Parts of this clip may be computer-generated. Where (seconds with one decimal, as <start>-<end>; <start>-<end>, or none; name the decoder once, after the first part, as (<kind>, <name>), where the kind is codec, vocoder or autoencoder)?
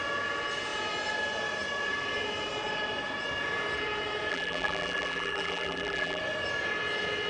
4.3-6.2 (vocoder, BigVGAN v2)